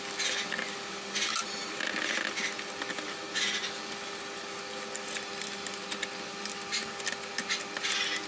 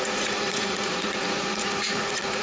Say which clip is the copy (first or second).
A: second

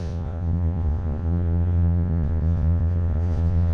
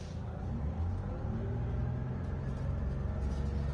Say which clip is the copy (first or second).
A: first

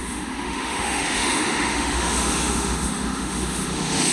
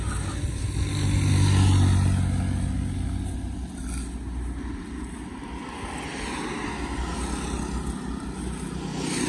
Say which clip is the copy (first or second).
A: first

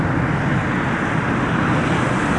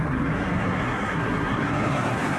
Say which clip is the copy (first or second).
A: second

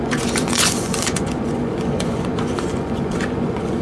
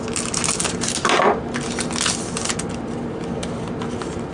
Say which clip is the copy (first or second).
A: first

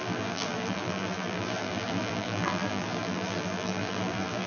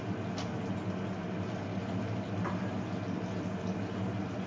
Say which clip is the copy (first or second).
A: first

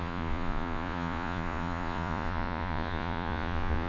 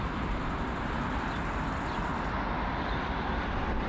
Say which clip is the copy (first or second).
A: first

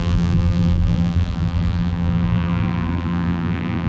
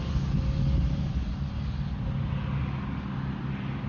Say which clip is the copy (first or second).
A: first